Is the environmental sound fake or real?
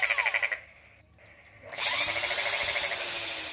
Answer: real